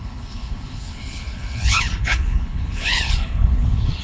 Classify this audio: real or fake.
fake